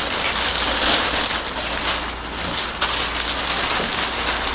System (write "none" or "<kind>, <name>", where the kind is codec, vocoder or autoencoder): none